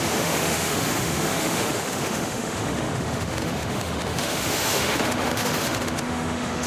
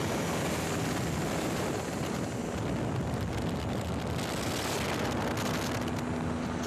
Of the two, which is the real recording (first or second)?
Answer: second